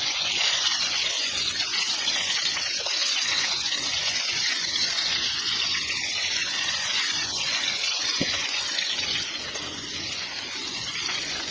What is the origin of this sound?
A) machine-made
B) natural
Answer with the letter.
A